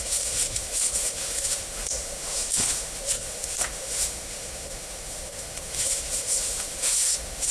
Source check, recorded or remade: remade